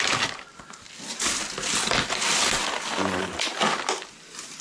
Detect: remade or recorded recorded